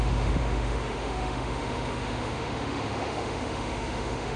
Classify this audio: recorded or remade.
remade